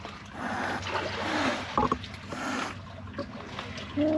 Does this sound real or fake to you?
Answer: real